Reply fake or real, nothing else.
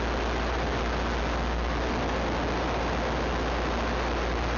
real